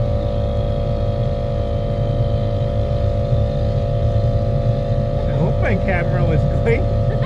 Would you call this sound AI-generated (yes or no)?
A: no